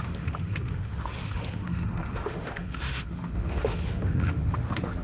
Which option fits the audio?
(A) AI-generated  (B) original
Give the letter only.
A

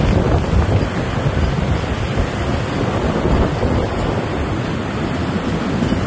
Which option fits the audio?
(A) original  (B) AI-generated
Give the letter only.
A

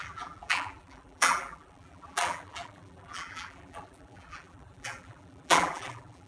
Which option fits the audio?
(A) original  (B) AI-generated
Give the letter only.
B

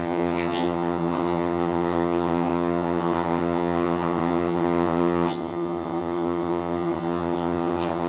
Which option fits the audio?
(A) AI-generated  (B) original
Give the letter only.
A